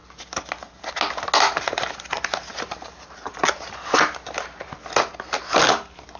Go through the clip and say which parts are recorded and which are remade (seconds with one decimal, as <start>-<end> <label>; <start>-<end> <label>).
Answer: 0.0-2.5 recorded; 2.5-3.4 remade; 3.4-6.2 recorded